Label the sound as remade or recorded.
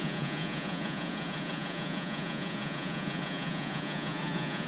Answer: remade